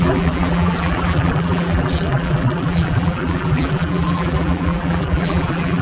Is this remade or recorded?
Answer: remade